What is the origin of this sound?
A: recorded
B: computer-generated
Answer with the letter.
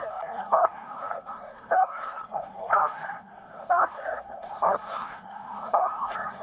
B